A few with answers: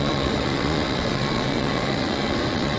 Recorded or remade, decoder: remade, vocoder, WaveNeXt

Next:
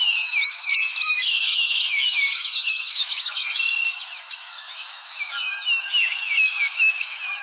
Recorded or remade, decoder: remade, autoencoder, DAC-VAE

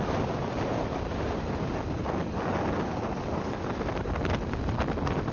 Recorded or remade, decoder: recorded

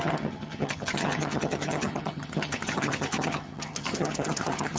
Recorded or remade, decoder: remade, vocoder, HiFi-GAN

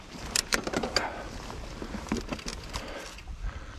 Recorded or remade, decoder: recorded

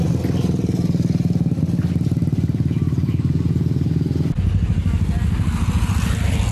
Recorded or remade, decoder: recorded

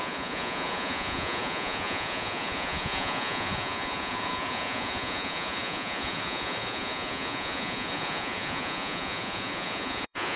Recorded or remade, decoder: remade, vocoder, Vocos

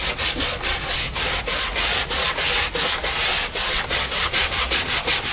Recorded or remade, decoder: recorded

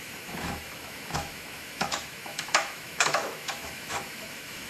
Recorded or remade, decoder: remade, autoencoder, DAC-VAE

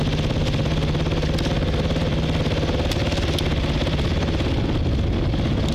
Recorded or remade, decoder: recorded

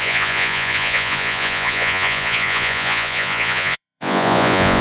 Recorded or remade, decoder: remade, vocoder, Vocos